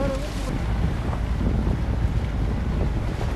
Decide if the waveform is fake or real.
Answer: real